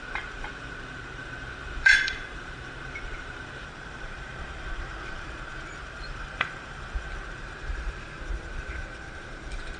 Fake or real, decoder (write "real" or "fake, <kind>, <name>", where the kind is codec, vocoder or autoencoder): fake, vocoder, BigVGAN v2